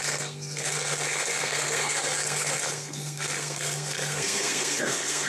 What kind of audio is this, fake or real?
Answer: fake